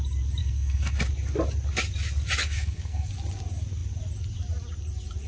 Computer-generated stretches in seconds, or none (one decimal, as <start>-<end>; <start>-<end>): 0.4-1.0; 2.4-3.1